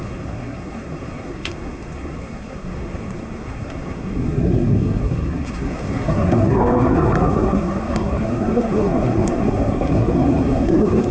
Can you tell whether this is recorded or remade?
remade